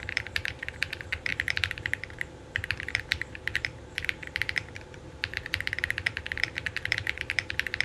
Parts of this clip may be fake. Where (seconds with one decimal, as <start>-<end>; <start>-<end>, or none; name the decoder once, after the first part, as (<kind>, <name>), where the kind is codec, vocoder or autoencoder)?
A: 0.0-7.8 (vocoder, BigVGAN v2)